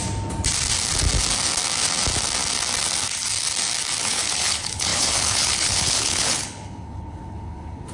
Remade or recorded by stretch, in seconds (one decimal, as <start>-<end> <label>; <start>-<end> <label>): 0.0-4.0 recorded; 4.0-7.9 remade